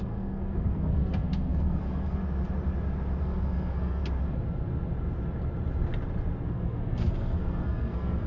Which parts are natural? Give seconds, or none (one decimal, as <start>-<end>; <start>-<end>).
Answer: 2.2-3.2; 4.0-6.5